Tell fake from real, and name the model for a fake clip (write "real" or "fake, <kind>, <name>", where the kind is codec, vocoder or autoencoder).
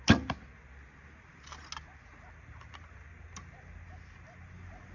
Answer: real